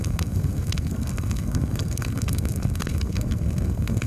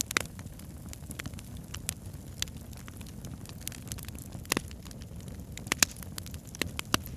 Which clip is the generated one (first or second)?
first